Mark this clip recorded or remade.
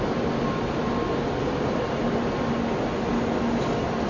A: recorded